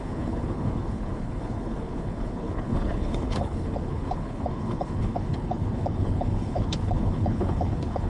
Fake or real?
fake